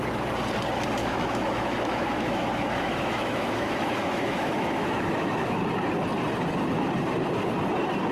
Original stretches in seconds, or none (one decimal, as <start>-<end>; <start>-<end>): 0.0-1.0; 5.6-8.1